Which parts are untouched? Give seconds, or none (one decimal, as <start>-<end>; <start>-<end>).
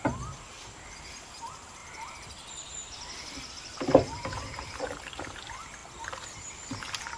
0.0-7.2